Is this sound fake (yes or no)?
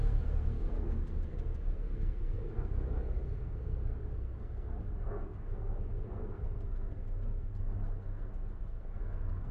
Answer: yes